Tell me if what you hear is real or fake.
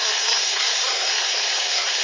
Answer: fake